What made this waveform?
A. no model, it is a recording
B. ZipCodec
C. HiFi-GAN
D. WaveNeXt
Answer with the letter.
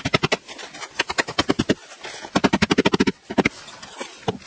A